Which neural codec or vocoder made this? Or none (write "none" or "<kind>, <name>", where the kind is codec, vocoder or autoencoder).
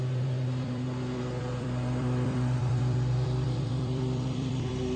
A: vocoder, BigVGAN v2